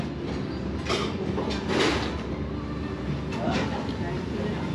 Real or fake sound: real